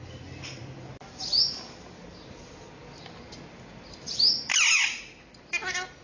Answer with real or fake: real